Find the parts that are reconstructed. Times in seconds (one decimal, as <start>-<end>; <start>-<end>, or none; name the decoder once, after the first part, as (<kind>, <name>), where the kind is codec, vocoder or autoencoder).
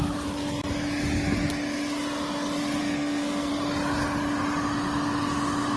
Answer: 2.8-3.5 (codec, SNAC)